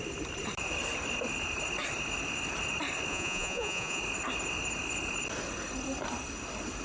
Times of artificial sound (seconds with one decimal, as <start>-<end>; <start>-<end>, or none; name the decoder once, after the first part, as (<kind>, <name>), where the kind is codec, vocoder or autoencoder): 3.1-4.0 (vocoder, Vocos)